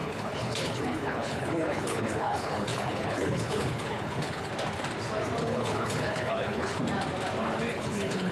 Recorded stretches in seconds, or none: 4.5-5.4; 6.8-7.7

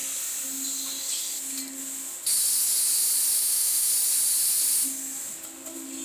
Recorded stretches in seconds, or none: 0.0-3.4; 3.9-6.0

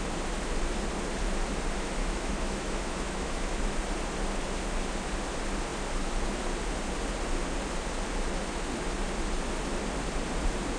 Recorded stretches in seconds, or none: 0.0-2.0; 3.6-10.8

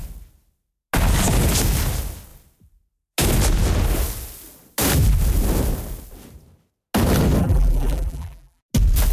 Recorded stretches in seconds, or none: 0.0-7.4; 8.6-9.1

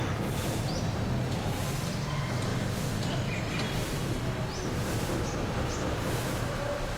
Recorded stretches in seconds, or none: 0.0-7.0

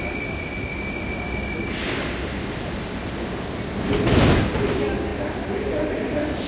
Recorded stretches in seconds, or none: 0.0-6.5

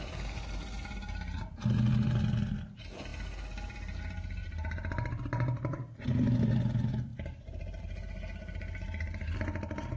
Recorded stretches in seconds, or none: 0.0-4.4; 6.1-10.0